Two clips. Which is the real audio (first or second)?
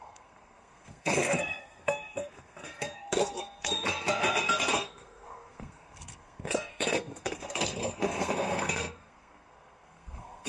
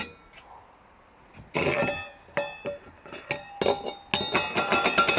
second